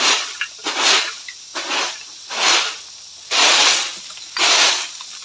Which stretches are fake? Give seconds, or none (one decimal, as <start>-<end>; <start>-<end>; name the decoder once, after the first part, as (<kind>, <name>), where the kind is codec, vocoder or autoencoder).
none